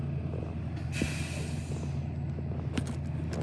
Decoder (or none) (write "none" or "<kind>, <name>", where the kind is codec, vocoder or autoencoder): none